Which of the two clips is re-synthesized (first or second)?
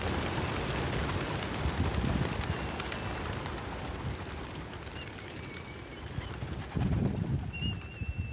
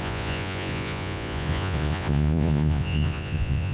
second